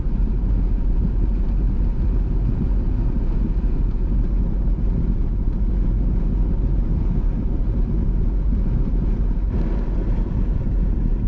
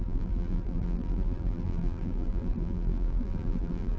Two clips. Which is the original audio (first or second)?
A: first